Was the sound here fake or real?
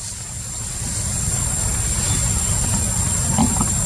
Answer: real